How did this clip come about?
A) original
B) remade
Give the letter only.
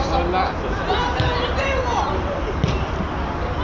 A